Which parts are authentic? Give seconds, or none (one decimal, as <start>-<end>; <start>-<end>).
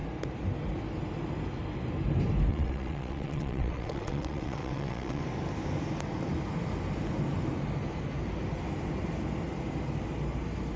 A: 0.0-2.5; 5.2-10.8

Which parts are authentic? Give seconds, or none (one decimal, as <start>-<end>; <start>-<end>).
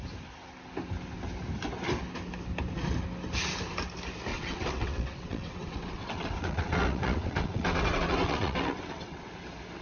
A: 0.0-4.3; 9.3-9.8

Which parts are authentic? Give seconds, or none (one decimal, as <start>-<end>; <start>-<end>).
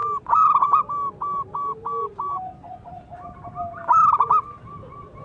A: 0.0-5.2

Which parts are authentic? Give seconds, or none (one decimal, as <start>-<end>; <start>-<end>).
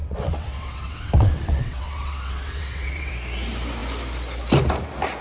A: 3.1-5.2